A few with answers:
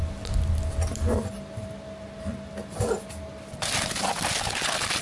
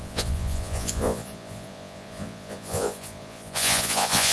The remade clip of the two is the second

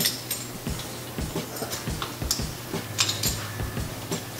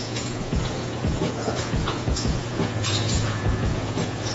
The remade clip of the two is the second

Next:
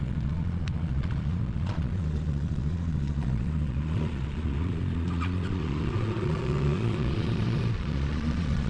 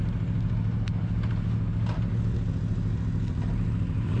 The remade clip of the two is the first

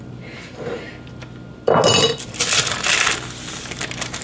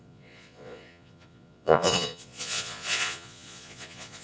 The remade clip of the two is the second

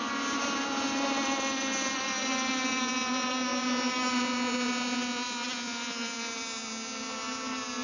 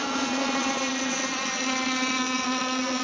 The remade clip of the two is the second